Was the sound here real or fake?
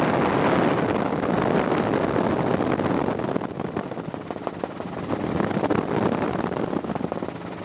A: real